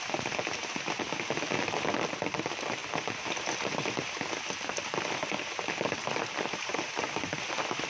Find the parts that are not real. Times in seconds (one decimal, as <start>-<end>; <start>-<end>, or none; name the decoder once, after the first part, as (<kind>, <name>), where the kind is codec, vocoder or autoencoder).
none